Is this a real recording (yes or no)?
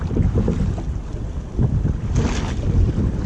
yes